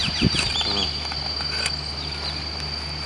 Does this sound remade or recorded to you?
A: recorded